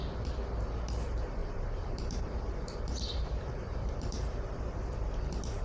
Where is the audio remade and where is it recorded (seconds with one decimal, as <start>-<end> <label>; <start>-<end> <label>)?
0.0-1.4 recorded; 1.4-4.8 remade; 4.8-5.6 recorded